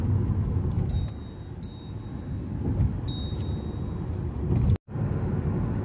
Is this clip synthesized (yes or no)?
no